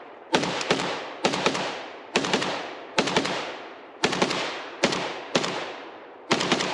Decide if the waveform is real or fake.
fake